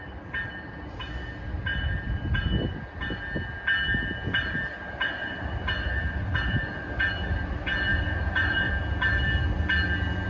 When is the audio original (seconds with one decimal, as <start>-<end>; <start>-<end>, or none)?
0.0-7.9; 8.7-10.3